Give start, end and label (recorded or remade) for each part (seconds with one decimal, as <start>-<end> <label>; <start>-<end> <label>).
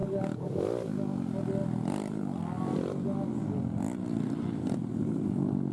0.0-0.6 remade; 0.6-5.7 recorded